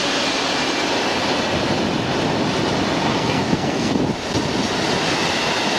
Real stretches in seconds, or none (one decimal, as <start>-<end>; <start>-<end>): 0.0-3.1; 4.0-5.8